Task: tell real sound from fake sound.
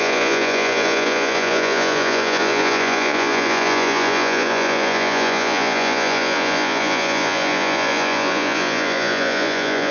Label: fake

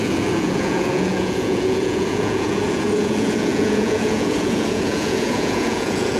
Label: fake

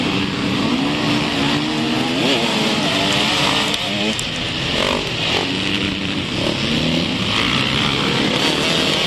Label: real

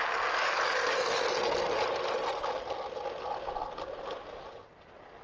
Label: real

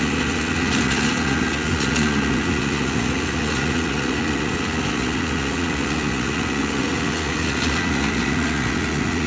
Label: fake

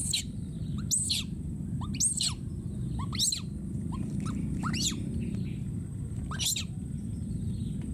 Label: real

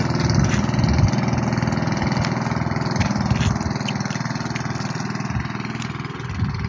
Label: real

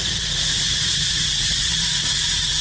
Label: fake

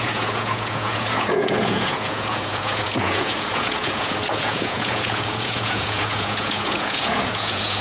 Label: fake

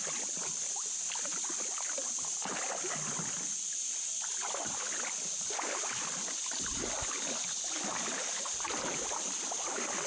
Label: real